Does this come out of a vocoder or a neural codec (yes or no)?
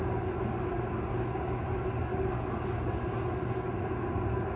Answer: no